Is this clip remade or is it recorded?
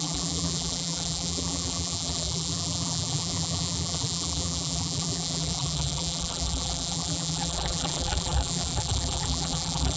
remade